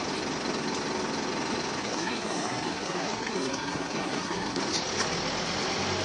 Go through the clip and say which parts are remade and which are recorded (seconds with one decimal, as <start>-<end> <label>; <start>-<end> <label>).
0.0-1.8 recorded; 1.8-4.6 remade; 4.6-6.0 recorded